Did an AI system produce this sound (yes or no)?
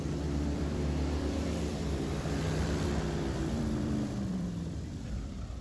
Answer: yes